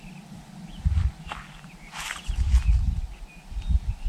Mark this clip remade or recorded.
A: recorded